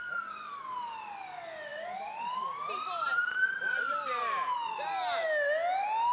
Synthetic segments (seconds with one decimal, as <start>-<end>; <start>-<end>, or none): 0.0-0.6; 1.7-5.0